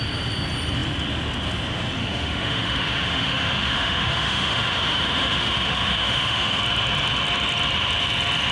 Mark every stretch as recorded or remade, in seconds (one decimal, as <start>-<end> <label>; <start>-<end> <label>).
0.0-2.0 recorded; 2.0-6.6 remade; 6.6-8.5 recorded